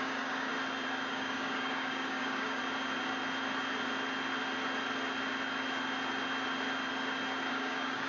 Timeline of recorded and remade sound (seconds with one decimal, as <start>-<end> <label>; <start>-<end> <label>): 0.0-0.5 remade; 0.5-1.1 recorded; 1.1-2.6 remade; 2.6-7.5 recorded; 7.5-8.1 remade